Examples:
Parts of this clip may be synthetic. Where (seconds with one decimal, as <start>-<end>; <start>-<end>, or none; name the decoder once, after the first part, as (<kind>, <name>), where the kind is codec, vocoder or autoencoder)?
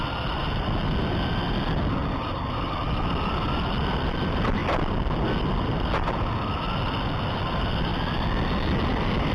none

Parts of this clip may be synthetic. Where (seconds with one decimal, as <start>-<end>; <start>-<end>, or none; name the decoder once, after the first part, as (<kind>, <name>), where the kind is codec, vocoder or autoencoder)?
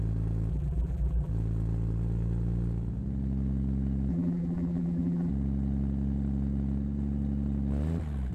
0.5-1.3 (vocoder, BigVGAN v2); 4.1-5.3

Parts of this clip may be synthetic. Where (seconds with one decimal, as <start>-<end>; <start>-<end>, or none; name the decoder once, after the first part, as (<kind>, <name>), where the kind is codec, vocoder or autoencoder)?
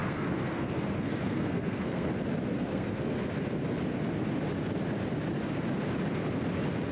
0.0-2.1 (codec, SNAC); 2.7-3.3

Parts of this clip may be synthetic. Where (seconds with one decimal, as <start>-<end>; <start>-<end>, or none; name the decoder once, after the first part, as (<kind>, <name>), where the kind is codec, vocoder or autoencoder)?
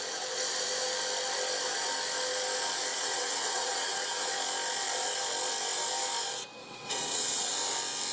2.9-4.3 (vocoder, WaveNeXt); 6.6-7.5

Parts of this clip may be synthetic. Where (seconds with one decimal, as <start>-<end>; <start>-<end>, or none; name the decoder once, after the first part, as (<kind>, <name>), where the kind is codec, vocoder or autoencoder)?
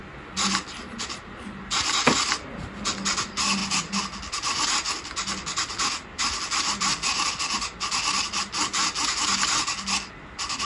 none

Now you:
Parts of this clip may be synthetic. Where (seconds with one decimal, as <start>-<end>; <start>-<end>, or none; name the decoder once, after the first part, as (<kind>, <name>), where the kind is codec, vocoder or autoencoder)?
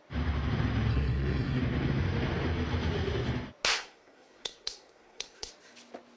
0.9-1.6 (codec, SNAC); 3.7-5.5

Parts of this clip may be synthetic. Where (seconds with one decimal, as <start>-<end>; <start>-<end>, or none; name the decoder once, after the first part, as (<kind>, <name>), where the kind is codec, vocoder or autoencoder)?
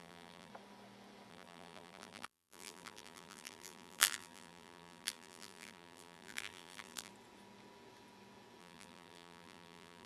0.0-0.5 (vocoder, BigVGAN v2); 1.3-7.1; 8.6-10.1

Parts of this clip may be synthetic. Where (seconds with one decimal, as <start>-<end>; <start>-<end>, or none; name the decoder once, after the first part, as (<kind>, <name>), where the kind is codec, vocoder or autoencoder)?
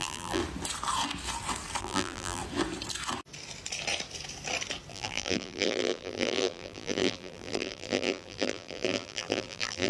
0.0-0.4 (vocoder, BigVGAN v2); 1.8-2.4; 4.9-9.9